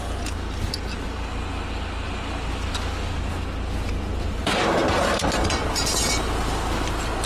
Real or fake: real